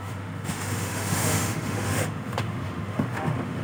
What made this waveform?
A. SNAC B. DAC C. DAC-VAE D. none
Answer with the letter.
C